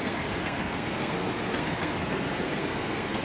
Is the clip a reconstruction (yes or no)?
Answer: yes